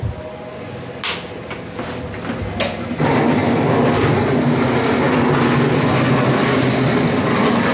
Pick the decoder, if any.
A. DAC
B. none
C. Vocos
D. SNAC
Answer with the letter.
B